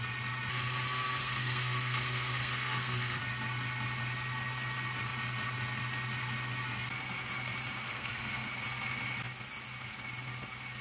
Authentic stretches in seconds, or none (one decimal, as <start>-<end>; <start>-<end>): 0.0-1.2; 3.2-7.9; 8.5-10.8